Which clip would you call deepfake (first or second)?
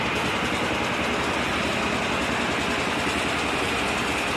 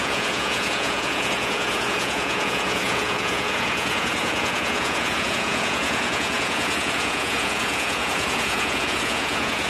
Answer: second